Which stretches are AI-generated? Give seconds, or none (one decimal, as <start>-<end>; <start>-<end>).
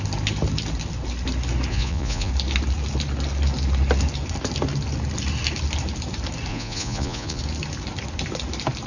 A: 1.7-2.3; 6.5-7.4